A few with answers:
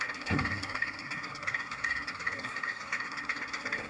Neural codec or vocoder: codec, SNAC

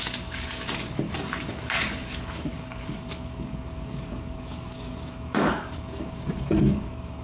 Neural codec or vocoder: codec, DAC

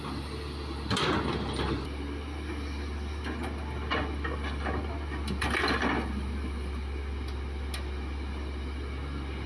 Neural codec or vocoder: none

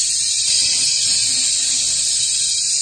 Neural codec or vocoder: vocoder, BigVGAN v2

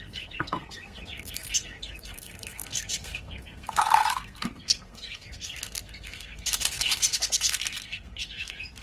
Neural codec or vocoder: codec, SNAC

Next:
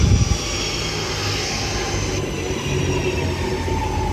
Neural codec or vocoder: none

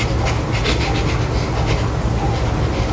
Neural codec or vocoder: none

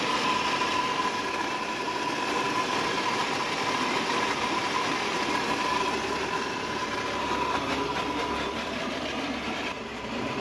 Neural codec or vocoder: vocoder, BigVGAN v2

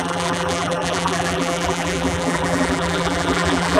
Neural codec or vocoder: vocoder, BigVGAN v2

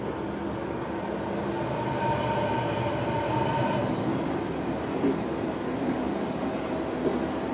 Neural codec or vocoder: none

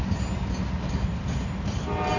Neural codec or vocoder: none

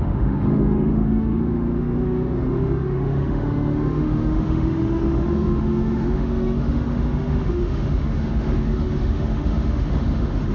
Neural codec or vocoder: autoencoder, DAC-VAE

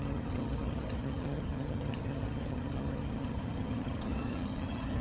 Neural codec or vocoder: vocoder, HiFi-GAN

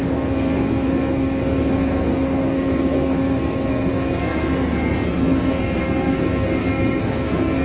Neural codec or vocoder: codec, SNAC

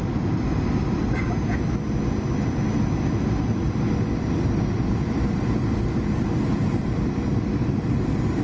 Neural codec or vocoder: none